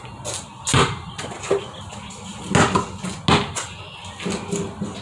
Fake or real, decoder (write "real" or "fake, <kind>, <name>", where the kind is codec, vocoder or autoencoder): real